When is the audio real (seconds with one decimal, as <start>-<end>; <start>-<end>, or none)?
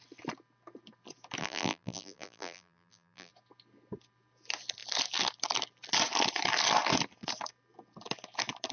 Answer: 0.0-1.4; 3.3-8.7